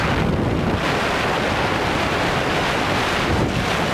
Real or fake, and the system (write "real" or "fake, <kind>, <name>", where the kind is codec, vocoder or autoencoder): real